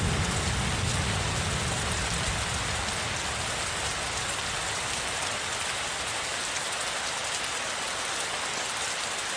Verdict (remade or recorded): recorded